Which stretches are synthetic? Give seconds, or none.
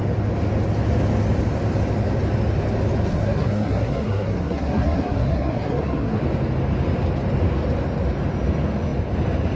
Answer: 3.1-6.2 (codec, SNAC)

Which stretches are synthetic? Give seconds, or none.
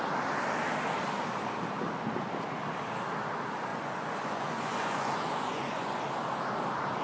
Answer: 3.7-6.0 (vocoder, Vocos)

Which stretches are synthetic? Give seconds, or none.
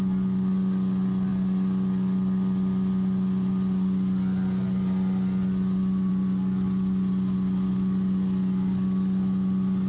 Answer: none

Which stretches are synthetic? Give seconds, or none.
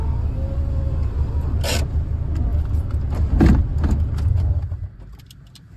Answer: none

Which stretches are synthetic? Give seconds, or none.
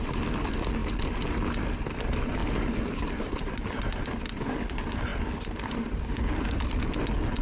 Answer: none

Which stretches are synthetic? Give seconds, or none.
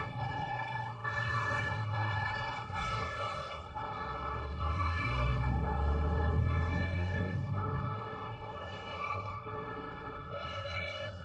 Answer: 0.0-11.2 (codec, SNAC)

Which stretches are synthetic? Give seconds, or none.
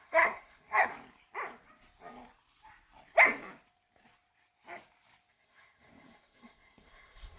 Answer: 0.0-0.9 (codec, SNAC); 5.3-7.4